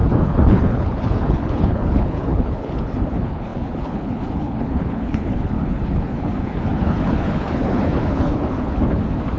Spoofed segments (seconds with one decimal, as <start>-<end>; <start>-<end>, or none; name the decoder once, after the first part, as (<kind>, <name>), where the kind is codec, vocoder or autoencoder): 0.0-9.4 (codec, HILCodec)